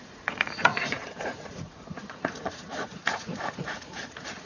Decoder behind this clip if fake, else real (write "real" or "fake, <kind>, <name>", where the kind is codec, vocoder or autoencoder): fake, vocoder, Vocos